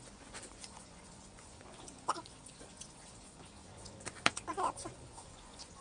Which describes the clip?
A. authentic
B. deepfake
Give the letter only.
B